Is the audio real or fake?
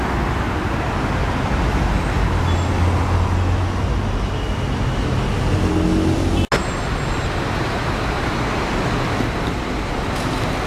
real